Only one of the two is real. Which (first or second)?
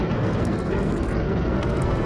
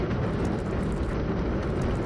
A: second